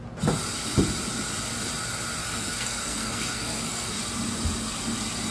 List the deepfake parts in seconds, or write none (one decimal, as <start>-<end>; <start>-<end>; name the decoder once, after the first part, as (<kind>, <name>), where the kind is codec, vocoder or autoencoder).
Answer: 2.2-4.0 (codec, SNAC)